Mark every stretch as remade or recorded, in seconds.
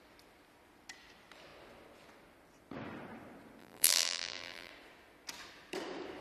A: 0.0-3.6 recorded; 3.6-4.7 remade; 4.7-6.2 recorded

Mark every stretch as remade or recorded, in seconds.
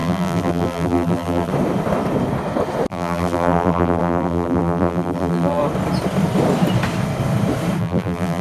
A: 0.0-1.5 remade; 1.5-2.9 recorded; 2.9-5.6 remade; 5.6-7.8 recorded; 7.8-8.4 remade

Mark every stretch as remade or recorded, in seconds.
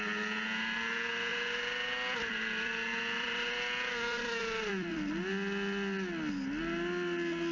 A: 0.0-1.3 recorded; 1.3-5.1 remade; 5.1-7.5 recorded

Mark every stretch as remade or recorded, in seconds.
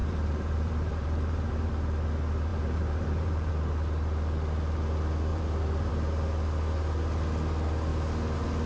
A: 0.0-1.7 remade; 1.7-2.5 recorded; 2.5-3.5 remade; 3.5-5.3 recorded; 5.3-5.9 remade; 5.9-8.7 recorded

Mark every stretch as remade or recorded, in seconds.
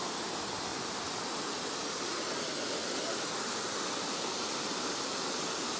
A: 0.0-0.7 remade; 0.7-4.2 recorded; 4.2-5.8 remade